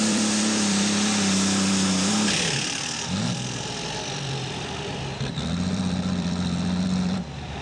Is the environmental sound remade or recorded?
remade